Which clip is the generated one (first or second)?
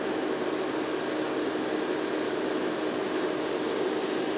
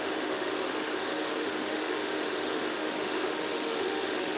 second